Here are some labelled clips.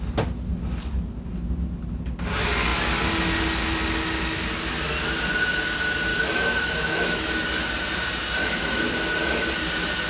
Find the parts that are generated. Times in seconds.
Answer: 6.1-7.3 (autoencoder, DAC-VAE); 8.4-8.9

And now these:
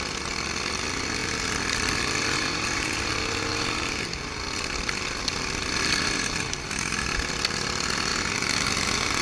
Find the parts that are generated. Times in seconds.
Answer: none

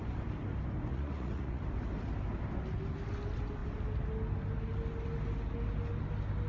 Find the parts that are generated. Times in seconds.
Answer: 0.9-1.6 (vocoder, Vocos)

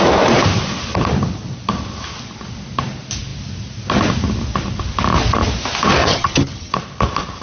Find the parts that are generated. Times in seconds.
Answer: 6.0-6.7 (vocoder, HiFi-GAN)